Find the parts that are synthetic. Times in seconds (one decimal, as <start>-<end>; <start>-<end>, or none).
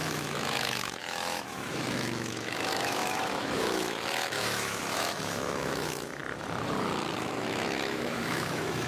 0.0-6.2; 7.2-8.9